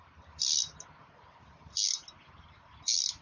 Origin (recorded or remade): recorded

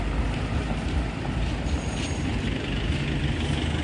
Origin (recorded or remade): recorded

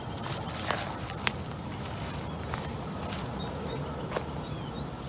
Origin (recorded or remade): recorded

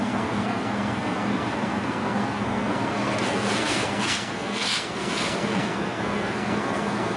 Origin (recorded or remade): remade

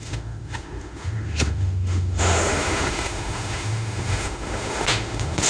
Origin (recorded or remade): remade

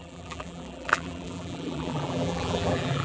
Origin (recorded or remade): remade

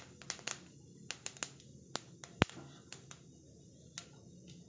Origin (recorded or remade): recorded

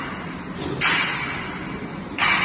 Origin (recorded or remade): recorded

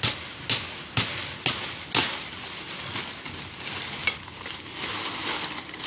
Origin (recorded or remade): recorded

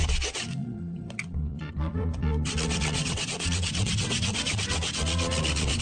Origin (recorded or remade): remade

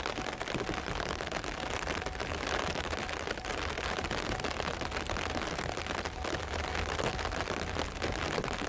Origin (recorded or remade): recorded